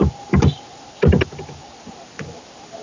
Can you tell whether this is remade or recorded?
recorded